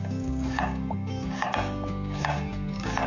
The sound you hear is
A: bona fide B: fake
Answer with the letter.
B